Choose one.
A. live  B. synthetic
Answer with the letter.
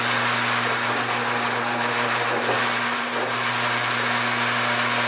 A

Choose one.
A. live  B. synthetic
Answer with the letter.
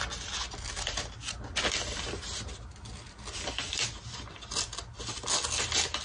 A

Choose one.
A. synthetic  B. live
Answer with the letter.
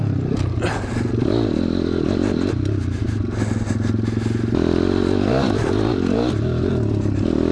B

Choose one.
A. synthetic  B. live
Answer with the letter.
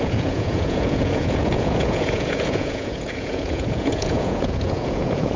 A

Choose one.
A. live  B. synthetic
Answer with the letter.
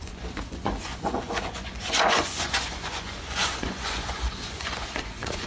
B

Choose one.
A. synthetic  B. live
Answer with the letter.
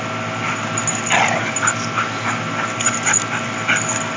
B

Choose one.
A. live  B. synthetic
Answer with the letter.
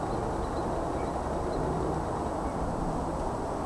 A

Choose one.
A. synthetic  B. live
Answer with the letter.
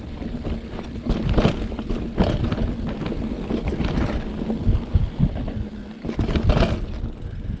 B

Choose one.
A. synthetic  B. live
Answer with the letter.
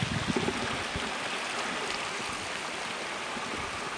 B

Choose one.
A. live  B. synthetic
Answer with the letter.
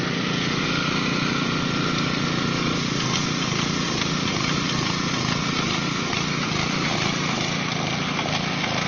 A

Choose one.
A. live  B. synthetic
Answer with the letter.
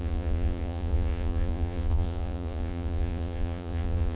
B